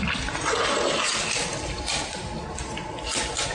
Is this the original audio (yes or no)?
yes